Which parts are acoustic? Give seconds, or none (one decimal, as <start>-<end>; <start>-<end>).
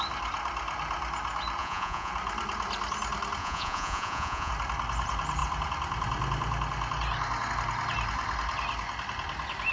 0.0-1.6; 2.1-3.4; 4.5-9.7